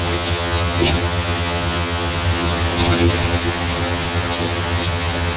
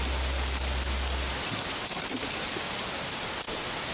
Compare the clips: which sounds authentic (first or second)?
second